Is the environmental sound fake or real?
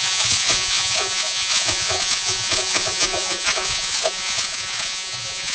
fake